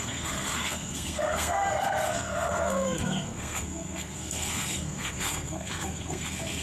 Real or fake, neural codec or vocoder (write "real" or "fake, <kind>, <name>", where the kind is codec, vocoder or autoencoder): fake, codec, SNAC